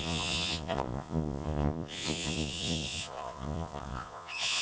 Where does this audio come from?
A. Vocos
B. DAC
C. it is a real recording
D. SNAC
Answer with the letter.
A